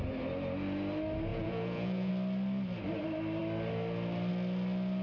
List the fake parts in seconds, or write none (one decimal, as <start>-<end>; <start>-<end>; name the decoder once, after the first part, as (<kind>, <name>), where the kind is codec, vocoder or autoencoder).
1.3-2.1 (vocoder, Vocos)